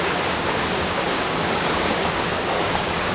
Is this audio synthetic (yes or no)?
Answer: yes